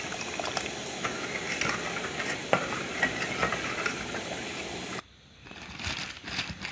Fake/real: real